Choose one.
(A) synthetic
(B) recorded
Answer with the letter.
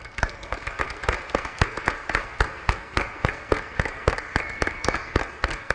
A